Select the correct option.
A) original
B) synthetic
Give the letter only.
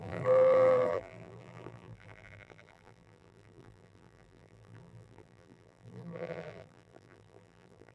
B